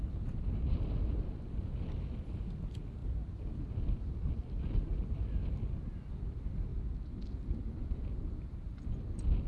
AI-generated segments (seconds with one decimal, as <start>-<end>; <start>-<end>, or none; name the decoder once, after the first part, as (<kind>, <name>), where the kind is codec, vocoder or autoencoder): 0.0-6.7 (vocoder, BigVGAN v2); 7.3-9.5

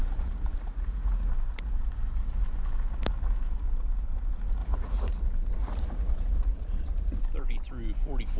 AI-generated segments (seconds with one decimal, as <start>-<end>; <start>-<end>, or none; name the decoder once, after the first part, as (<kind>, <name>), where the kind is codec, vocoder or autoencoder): 0.0-1.3 (vocoder, Vocos); 4.6-5.1; 5.6-7.2

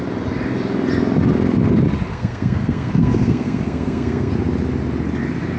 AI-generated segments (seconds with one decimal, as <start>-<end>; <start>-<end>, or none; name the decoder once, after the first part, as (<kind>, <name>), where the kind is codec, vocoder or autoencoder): 2.1-4.3 (codec, SNAC)

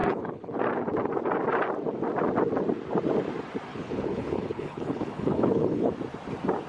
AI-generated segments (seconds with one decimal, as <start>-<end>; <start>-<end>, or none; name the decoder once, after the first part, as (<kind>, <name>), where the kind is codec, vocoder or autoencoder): 0.0-0.6 (codec, HILCodec); 3.7-5.9